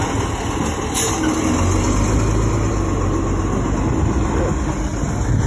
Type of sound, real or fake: real